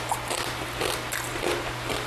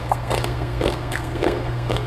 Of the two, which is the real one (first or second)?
first